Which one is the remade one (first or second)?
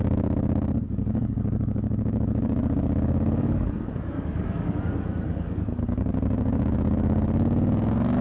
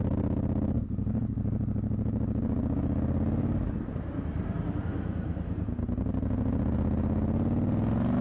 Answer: first